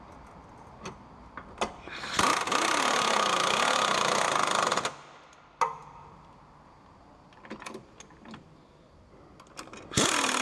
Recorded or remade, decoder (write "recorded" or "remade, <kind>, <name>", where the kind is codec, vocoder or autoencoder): recorded